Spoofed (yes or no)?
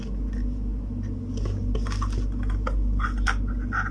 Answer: no